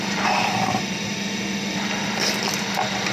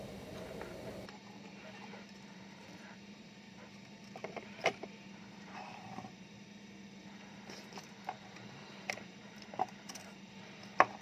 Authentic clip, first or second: first